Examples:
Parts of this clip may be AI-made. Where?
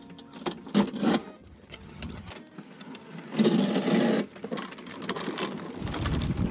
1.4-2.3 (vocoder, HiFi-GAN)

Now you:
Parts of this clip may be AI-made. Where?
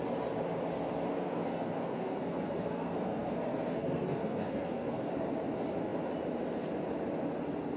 1.1-5.1 (codec, SNAC)